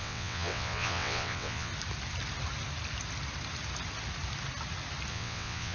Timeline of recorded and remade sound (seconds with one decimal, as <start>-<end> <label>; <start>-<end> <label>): 0.0-1.7 remade; 1.7-5.1 recorded; 5.1-5.7 remade